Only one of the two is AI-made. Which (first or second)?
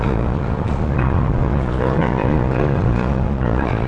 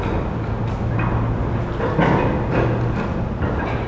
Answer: first